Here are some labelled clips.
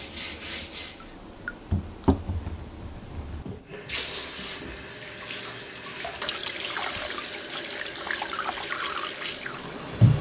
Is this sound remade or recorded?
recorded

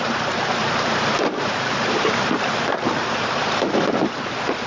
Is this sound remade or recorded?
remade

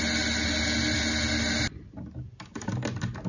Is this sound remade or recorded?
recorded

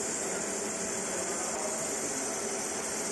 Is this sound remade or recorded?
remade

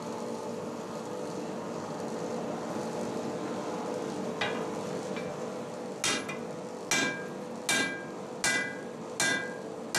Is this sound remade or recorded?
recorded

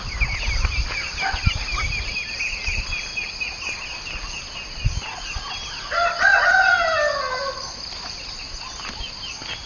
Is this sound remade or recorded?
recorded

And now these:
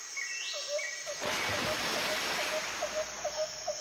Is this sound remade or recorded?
recorded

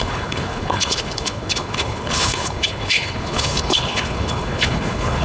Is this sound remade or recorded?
remade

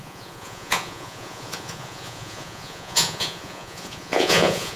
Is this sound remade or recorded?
remade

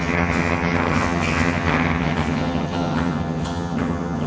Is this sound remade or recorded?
remade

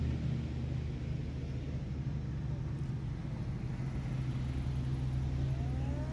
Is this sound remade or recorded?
recorded